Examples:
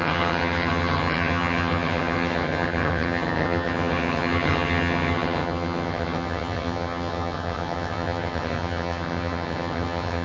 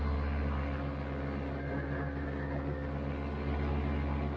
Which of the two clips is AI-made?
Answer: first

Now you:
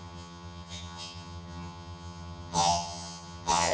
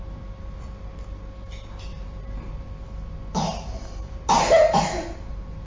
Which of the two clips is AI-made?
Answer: first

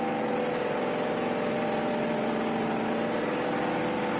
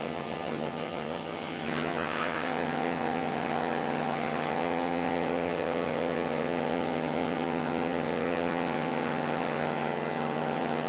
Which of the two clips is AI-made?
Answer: second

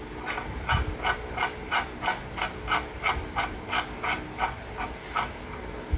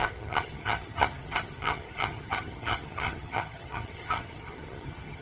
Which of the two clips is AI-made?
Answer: second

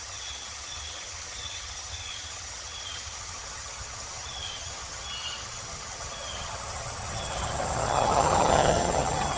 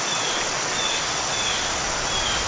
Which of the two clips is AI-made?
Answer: first